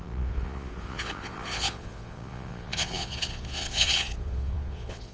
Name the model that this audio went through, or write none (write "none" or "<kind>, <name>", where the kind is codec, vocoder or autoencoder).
vocoder, Vocos